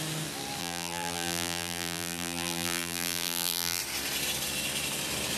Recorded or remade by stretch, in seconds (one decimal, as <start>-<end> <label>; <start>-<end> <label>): 0.0-0.6 recorded; 0.6-3.8 remade; 3.8-5.4 recorded